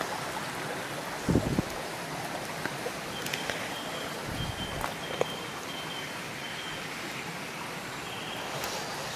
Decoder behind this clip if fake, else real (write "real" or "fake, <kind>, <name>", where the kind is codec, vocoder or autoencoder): real